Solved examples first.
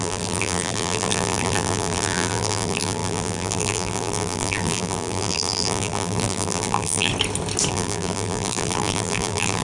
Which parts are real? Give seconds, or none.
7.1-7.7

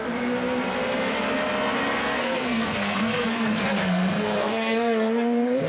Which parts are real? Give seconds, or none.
0.0-2.0

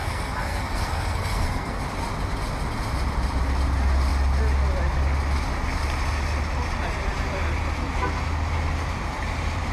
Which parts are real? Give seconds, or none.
1.8-9.7

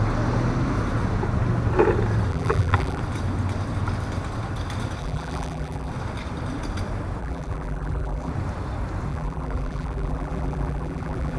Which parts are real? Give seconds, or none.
0.0-2.3; 3.0-5.0; 5.9-7.2; 8.3-9.1

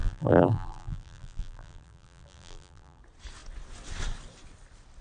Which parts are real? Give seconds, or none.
3.0-5.0

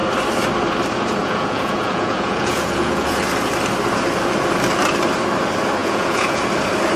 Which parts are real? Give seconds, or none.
0.0-1.2; 3.2-5.8; 6.4-7.0